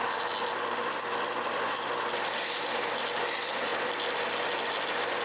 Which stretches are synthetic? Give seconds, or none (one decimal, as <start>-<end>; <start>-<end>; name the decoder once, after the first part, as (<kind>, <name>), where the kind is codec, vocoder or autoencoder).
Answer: none